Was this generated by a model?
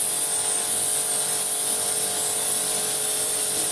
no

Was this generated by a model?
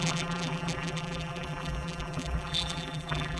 yes